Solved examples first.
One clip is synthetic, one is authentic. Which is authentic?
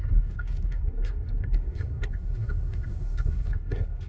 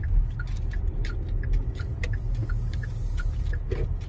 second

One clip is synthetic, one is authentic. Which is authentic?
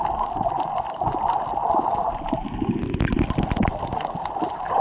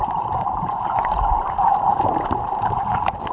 first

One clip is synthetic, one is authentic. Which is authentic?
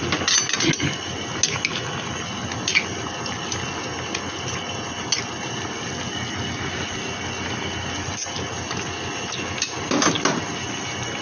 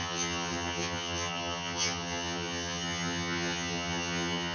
first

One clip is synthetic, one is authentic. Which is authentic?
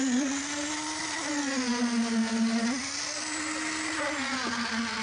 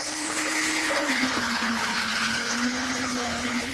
first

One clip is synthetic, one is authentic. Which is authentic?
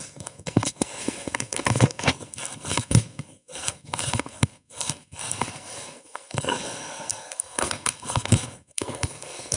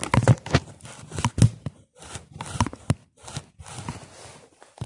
second